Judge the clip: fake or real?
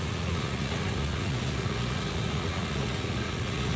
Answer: fake